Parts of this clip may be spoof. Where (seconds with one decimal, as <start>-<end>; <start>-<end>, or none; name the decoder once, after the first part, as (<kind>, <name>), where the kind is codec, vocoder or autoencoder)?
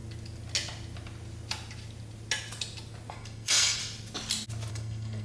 3.1-3.8 (codec, SNAC); 4.7-5.2